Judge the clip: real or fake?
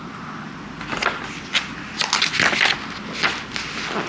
real